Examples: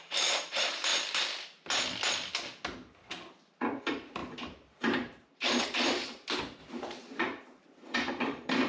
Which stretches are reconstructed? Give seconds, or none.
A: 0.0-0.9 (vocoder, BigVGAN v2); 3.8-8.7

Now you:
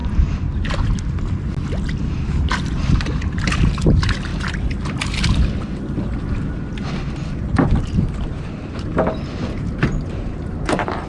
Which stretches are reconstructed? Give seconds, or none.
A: 2.0-4.3 (vocoder, BigVGAN v2); 8.0-8.9; 9.5-11.1

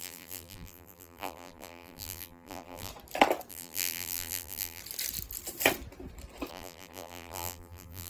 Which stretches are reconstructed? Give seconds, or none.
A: 0.0-2.9 (vocoder, BigVGAN v2); 3.5-4.8; 6.5-8.1

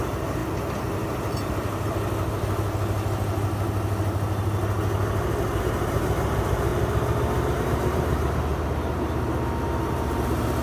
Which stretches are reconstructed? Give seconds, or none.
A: 0.0-0.4 (vocoder, BigVGAN v2); 5.6-6.7; 7.6-8.5; 9.8-10.6

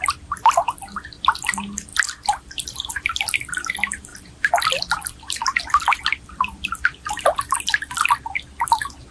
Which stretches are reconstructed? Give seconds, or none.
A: 1.9-3.5 (vocoder, BigVGAN v2); 4.1-7.6

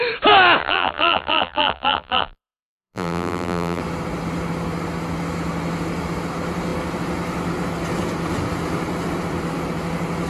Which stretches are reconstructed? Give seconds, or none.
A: 0.6-3.8 (vocoder, BigVGAN v2)

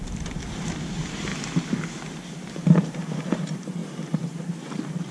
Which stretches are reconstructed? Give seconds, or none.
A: 0.0-1.3 (vocoder, BigVGAN v2); 2.8-5.1

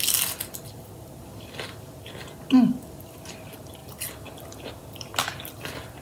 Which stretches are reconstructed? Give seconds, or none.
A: none